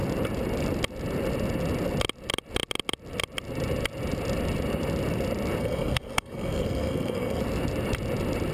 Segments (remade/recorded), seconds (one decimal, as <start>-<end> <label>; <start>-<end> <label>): 0.0-5.6 recorded; 5.6-7.4 remade; 7.4-8.5 recorded